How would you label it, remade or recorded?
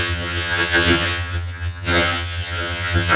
remade